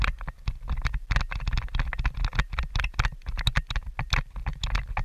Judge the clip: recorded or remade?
recorded